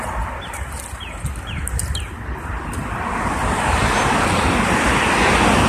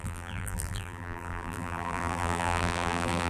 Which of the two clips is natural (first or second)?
first